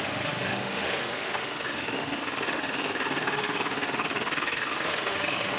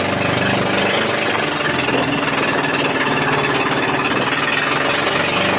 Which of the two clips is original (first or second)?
second